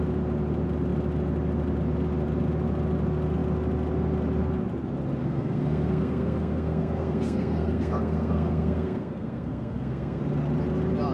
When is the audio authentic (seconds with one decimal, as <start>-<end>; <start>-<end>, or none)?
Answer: 0.0-5.2; 10.2-11.1

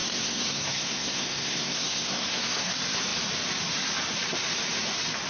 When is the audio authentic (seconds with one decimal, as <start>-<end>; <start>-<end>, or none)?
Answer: 2.7-5.3

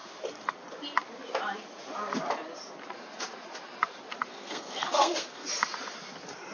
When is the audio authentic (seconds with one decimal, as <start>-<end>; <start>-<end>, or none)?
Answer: 0.0-4.3; 5.5-6.5